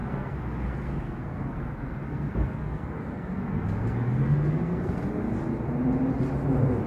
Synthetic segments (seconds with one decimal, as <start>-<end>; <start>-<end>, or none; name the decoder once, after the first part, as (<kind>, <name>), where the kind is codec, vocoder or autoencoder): 0.0-5.0 (codec, SNAC)